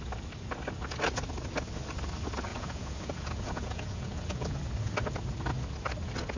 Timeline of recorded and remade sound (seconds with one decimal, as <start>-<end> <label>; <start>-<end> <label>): 0.0-2.5 recorded; 2.5-4.6 remade; 4.6-6.4 recorded